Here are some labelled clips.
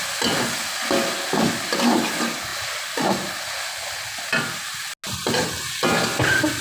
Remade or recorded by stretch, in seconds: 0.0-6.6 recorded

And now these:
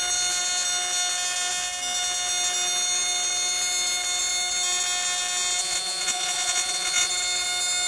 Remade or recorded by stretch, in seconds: 0.0-5.6 recorded; 5.6-7.1 remade; 7.1-7.9 recorded

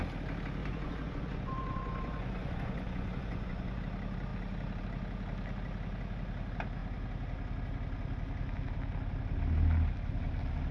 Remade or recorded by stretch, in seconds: 0.0-0.6 recorded; 0.6-3.8 remade; 3.8-10.7 recorded